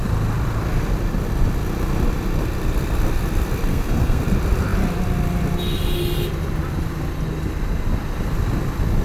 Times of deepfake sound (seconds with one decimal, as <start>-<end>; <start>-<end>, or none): 3.7-4.2